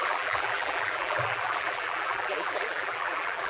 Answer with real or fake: fake